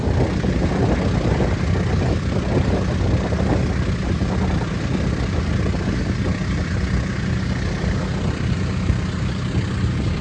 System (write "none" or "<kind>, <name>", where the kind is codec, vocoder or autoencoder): none